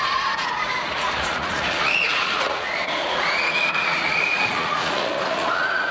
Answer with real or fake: fake